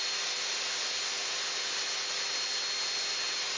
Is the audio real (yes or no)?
yes